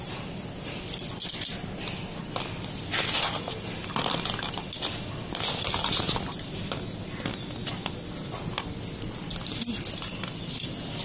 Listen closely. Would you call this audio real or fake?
real